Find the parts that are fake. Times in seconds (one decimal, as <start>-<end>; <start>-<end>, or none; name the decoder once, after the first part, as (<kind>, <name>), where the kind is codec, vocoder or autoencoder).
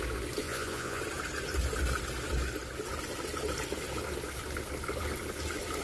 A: 0.4-1.0 (vocoder, Vocos)